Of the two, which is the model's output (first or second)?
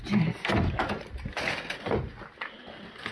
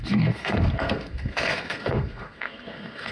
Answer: second